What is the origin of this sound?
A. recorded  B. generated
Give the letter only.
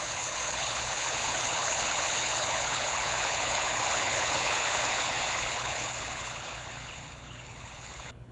B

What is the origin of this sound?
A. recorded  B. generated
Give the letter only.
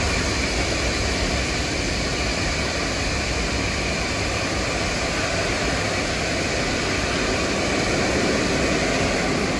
A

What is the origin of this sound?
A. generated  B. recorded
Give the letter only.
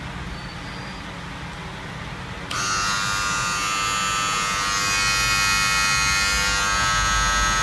B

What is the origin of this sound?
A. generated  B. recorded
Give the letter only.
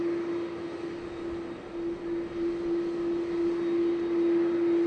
B